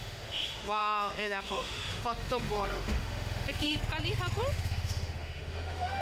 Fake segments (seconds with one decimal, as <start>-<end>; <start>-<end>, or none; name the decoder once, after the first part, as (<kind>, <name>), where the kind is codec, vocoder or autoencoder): 0.0-3.8 (autoencoder, DAC-VAE); 4.5-6.0